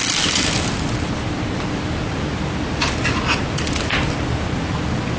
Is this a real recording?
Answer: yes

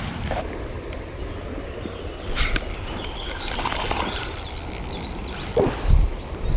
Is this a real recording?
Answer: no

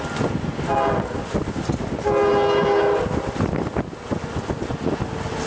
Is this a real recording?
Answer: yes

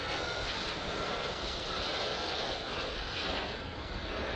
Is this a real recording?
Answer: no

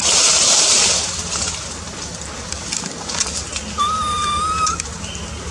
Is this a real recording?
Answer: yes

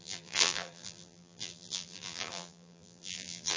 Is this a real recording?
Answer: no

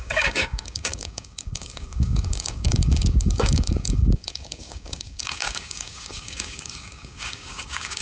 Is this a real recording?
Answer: no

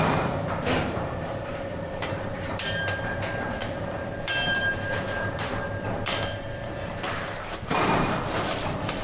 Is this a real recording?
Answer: no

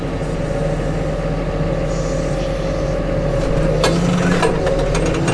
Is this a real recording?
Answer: yes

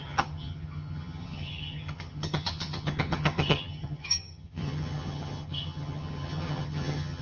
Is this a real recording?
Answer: no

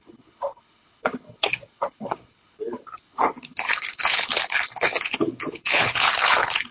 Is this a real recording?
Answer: no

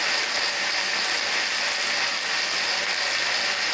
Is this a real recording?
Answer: yes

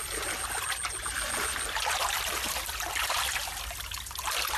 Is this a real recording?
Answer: yes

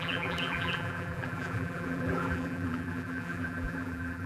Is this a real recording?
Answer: no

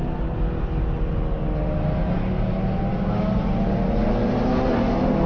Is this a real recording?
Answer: yes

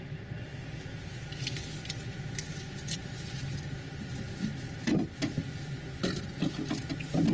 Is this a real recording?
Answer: yes